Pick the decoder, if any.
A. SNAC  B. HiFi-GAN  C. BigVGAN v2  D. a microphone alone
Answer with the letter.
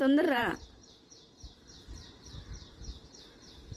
C